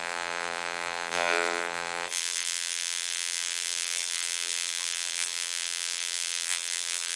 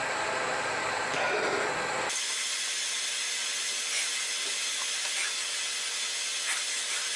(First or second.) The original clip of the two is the second